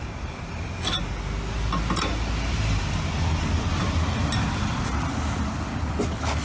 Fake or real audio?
real